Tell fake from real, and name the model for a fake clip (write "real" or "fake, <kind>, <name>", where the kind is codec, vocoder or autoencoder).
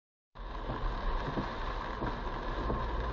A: real